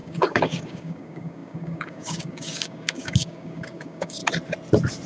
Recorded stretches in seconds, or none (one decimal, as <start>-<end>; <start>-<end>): 4.2-5.1